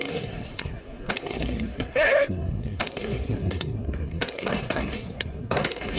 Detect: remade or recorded remade